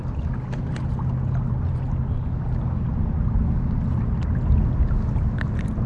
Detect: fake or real real